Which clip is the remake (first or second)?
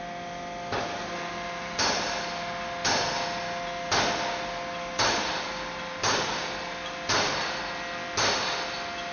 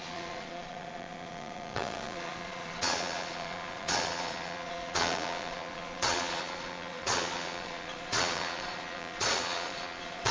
second